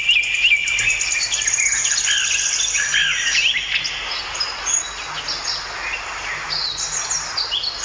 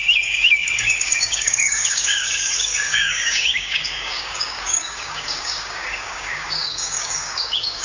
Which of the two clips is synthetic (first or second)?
second